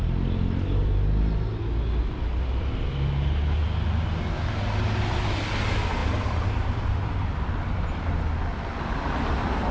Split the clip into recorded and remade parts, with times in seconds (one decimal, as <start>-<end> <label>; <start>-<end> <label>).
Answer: 0.0-6.0 recorded; 6.0-7.1 remade; 7.1-9.7 recorded